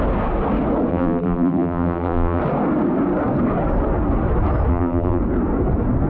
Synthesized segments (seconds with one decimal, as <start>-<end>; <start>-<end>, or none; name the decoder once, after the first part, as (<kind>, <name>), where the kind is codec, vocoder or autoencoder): 0.9-2.4 (vocoder, BigVGAN v2); 4.7-5.2